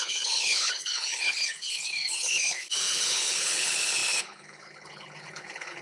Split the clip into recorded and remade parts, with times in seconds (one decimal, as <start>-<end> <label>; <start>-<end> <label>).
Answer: 0.0-5.8 remade